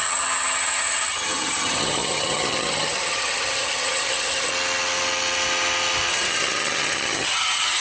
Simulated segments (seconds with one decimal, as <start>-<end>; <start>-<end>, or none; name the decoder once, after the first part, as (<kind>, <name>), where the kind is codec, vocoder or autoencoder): 0.0-4.5 (vocoder, HiFi-GAN); 6.1-7.8